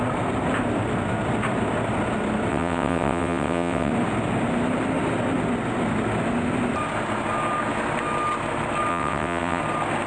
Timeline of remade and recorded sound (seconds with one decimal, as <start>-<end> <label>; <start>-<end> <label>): 0.0-2.5 recorded; 2.5-3.9 remade; 3.9-8.9 recorded; 8.9-9.6 remade; 9.6-10.1 recorded